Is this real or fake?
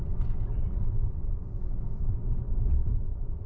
fake